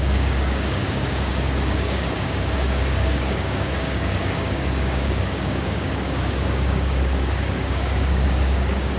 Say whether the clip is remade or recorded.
remade